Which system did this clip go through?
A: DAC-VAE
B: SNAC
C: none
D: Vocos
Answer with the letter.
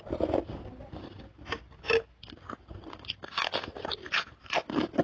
C